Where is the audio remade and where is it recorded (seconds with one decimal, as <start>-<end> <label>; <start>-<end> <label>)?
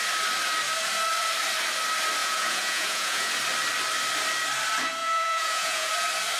0.0-2.2 recorded; 2.2-3.3 remade; 3.3-5.0 recorded; 5.0-5.9 remade; 5.9-6.4 recorded